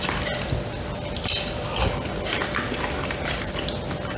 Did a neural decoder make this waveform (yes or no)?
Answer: no